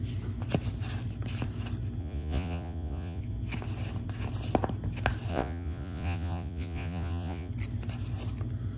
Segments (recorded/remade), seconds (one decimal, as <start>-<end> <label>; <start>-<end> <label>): 0.0-2.0 recorded; 2.0-3.2 remade; 3.2-5.3 recorded; 5.3-7.5 remade; 7.5-8.8 recorded